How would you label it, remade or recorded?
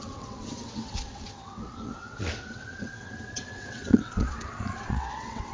remade